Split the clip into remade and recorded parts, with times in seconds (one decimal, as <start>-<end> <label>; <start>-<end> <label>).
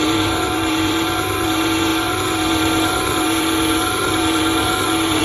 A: 0.0-5.2 remade